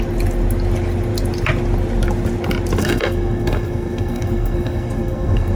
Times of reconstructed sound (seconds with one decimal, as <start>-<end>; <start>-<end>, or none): 2.8-5.6